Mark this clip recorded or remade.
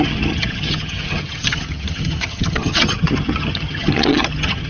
remade